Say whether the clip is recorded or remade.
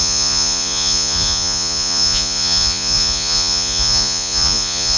remade